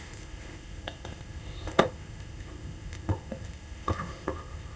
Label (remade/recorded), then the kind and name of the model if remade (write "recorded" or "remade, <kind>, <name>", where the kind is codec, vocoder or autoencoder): remade, codec, ZipCodec